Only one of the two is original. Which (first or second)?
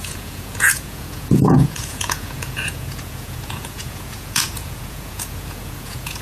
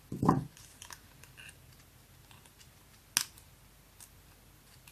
second